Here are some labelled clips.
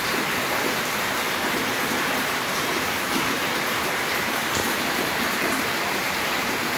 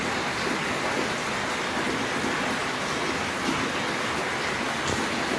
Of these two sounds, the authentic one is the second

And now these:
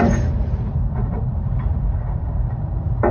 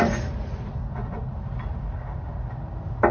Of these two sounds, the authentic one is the second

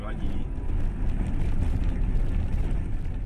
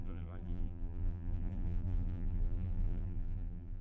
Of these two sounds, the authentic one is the first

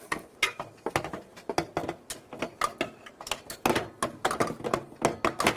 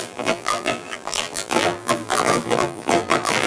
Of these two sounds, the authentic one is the first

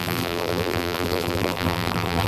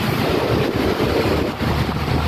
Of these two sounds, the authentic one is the second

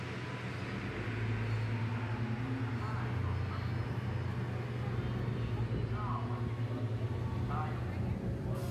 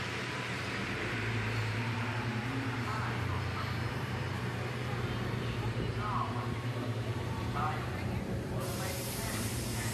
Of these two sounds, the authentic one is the first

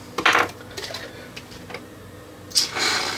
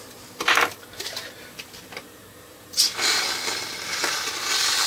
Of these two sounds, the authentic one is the first